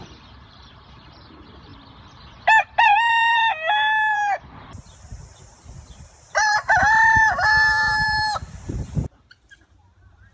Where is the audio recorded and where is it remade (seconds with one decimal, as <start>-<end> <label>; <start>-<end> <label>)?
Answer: 0.0-1.7 remade; 1.7-2.6 recorded; 2.6-3.4 remade; 3.4-4.1 recorded; 4.1-10.3 remade

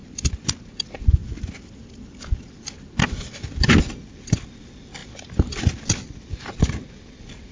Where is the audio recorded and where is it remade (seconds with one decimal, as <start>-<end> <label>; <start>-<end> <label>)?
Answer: 0.0-7.5 recorded

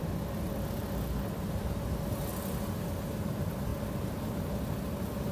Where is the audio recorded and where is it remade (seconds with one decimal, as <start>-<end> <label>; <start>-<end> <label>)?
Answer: 0.0-5.3 recorded

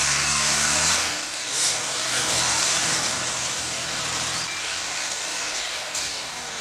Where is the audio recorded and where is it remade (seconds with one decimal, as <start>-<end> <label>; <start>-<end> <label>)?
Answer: 0.0-4.0 remade; 4.0-4.6 recorded; 4.6-6.6 remade